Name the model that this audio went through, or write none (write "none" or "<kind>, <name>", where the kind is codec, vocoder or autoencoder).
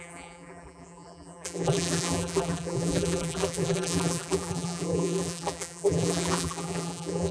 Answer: vocoder, BigVGAN v2